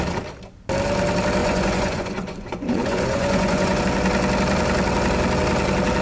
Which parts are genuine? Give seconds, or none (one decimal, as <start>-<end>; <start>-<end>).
0.0-1.4; 3.8-6.0